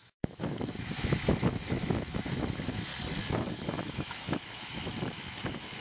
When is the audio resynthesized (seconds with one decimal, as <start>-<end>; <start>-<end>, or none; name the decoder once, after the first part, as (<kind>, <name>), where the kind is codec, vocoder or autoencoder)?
0.0-2.9 (autoencoder, DAC-VAE); 3.5-5.8